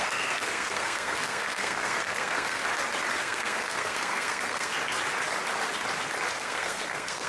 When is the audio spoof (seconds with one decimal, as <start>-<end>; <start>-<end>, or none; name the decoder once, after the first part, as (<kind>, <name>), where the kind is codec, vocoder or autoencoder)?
0.0-2.6 (codec, SNAC); 3.2-4.7; 6.4-7.3